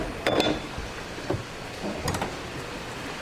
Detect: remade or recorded recorded